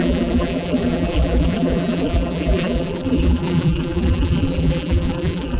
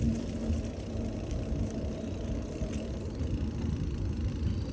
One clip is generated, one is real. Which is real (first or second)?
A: second